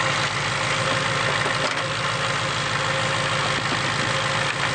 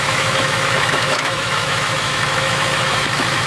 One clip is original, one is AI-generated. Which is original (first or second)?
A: first